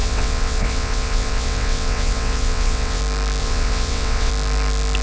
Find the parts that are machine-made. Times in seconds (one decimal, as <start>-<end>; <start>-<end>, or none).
0.0-3.0; 3.4-4.3